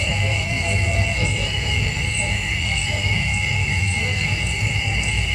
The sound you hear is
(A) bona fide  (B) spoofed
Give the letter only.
B